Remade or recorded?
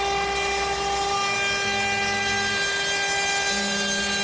recorded